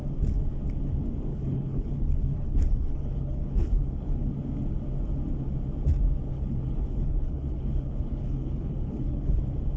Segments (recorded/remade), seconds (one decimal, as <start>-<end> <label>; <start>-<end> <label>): 0.0-1.3 recorded; 1.3-4.2 remade; 4.2-6.3 recorded; 6.3-9.4 remade; 9.4-9.8 recorded